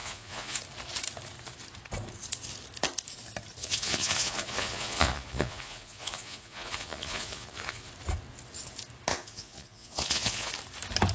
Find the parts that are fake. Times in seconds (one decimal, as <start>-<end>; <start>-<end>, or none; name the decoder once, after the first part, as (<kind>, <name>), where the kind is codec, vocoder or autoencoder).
0.0-0.6 (vocoder, Vocos); 3.6-7.9; 9.1-10.5